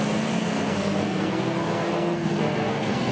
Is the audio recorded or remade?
remade